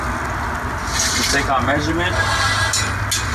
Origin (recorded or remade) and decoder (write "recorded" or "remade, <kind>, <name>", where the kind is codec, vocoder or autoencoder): recorded